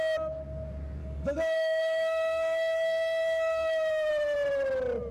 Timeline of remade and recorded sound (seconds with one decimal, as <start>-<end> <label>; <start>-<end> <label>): 0.0-1.0 recorded; 1.0-4.1 remade; 4.1-5.1 recorded